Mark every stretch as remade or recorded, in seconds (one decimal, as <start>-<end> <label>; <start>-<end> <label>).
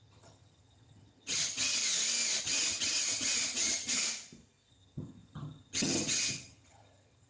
0.0-1.8 remade; 1.8-2.4 recorded; 2.4-4.0 remade; 4.0-4.7 recorded; 4.7-7.3 remade